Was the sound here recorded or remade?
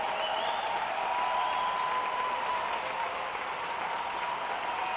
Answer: recorded